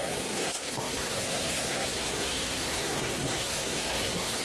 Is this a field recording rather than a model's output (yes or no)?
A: no